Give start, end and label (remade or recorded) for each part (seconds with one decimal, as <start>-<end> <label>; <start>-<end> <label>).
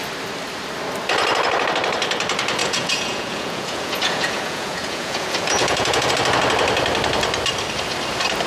0.0-2.6 recorded; 2.6-6.1 remade; 6.1-8.5 recorded